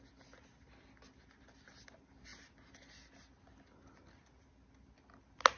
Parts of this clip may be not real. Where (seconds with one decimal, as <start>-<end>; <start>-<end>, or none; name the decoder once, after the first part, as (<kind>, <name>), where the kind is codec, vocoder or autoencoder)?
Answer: none